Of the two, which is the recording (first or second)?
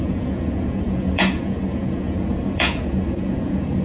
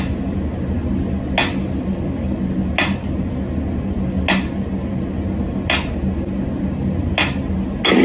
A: second